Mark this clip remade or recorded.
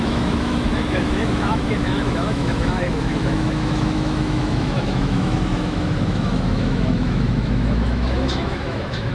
remade